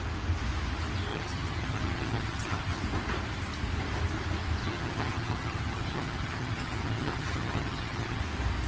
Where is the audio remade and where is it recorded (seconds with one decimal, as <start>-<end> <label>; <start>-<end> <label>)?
0.0-1.1 recorded; 1.1-2.8 remade; 2.8-4.6 recorded; 4.6-8.2 remade; 8.2-8.7 recorded